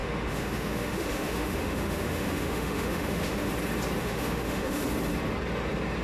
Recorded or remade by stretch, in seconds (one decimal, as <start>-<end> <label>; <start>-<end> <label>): 0.0-3.5 remade; 3.5-4.0 recorded; 4.0-4.8 remade; 4.8-6.0 recorded